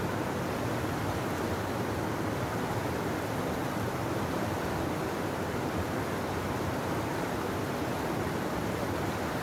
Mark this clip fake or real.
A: fake